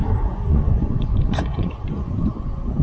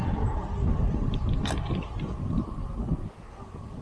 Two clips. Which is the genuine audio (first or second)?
second